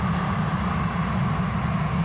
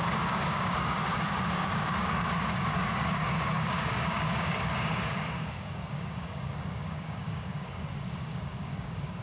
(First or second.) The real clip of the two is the first